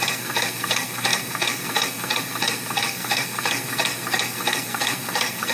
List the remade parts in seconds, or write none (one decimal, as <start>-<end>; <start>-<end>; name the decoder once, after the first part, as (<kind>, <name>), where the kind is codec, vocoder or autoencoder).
0.0-5.5 (codec, SNAC)